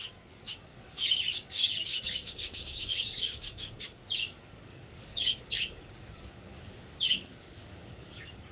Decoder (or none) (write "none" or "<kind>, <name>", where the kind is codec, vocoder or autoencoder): codec, DAC